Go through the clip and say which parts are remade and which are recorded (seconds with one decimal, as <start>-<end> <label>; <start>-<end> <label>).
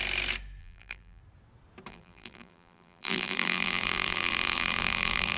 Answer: 0.0-0.6 recorded; 0.6-1.2 remade; 1.2-1.9 recorded; 1.9-5.4 remade